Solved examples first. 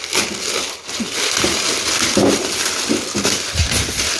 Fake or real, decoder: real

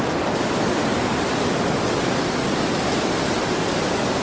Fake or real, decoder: real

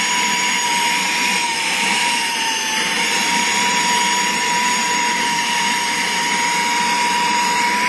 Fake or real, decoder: fake, vocoder, BigVGAN v2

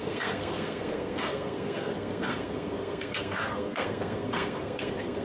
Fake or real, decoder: fake, codec, SNAC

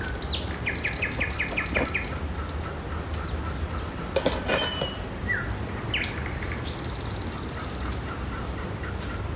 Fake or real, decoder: real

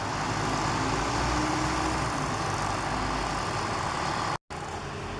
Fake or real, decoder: real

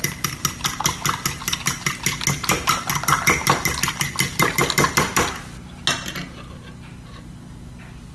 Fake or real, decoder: real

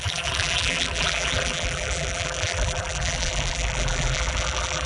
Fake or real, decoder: fake, vocoder, BigVGAN v2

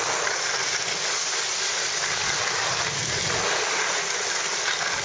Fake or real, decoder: real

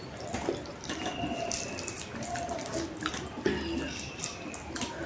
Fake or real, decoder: real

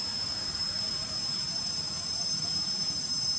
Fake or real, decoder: fake, vocoder, BigVGAN v2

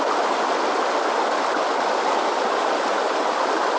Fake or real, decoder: real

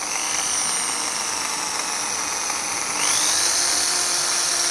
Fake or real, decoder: real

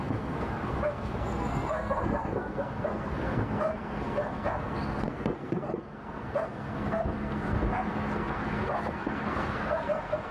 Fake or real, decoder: fake, codec, SNAC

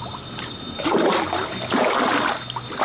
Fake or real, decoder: real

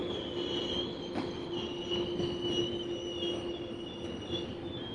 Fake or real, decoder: real